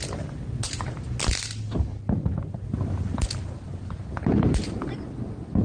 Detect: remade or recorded recorded